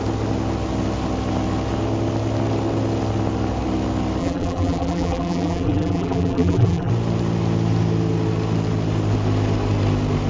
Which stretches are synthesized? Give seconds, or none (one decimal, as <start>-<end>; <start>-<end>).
4.2-6.9